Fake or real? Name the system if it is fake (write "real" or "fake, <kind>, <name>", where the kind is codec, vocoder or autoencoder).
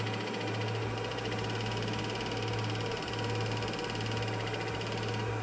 real